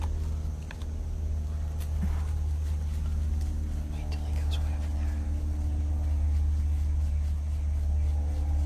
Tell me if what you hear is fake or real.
real